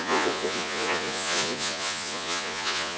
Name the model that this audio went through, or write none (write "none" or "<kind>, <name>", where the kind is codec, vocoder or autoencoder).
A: vocoder, Vocos